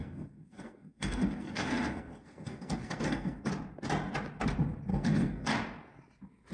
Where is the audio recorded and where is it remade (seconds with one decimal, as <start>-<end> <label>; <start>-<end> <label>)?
0.0-3.5 remade; 3.5-4.9 recorded; 4.9-5.5 remade; 5.5-6.5 recorded